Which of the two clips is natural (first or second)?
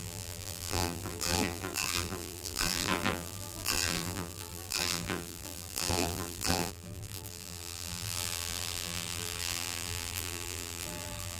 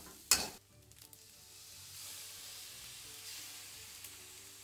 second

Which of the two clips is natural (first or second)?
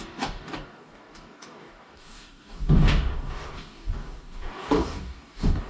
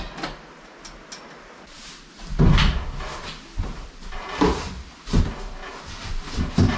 second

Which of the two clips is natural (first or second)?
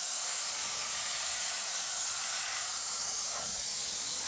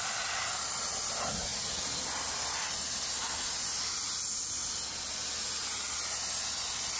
second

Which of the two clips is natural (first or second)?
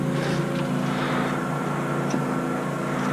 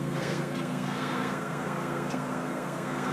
first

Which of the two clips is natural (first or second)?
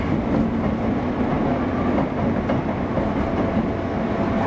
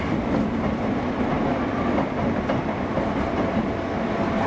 first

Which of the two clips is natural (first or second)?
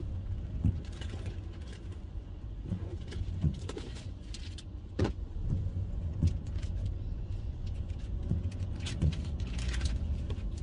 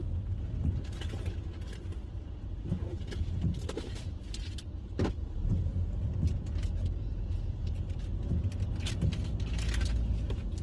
second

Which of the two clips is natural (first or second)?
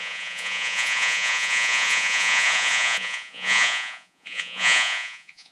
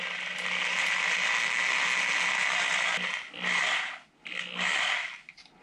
second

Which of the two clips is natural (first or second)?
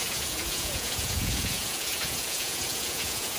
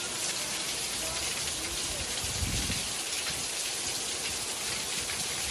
second